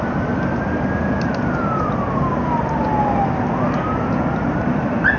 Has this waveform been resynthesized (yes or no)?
no